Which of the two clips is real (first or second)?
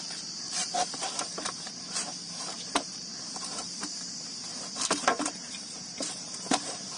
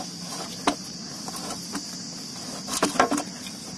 second